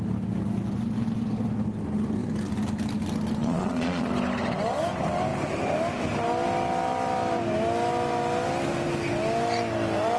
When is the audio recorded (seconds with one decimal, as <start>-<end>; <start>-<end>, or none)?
0.0-3.4; 4.1-10.2